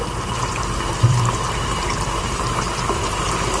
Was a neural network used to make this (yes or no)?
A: yes